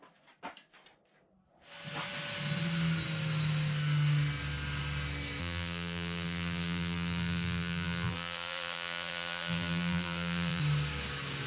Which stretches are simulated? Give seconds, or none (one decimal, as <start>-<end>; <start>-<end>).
5.4-10.6